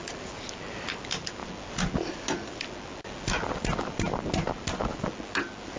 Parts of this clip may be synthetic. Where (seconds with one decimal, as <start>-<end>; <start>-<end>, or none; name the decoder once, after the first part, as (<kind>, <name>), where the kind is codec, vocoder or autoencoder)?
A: none